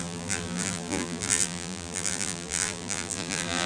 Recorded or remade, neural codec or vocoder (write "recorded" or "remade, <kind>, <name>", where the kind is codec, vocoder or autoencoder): remade, vocoder, BigVGAN v2